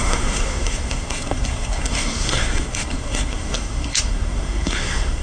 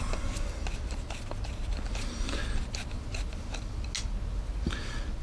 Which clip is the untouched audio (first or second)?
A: second